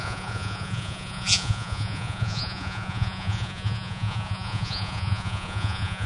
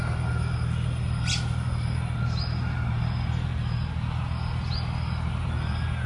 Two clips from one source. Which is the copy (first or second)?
first